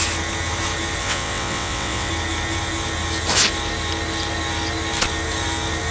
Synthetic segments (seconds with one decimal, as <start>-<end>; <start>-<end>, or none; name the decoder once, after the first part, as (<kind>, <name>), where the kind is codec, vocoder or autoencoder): 1.0-2.1 (vocoder, WaveNeXt)